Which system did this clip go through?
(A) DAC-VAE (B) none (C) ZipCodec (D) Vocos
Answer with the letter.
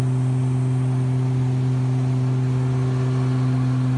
B